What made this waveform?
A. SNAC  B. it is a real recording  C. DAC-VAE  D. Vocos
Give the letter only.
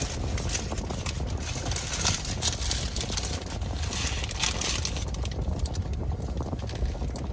B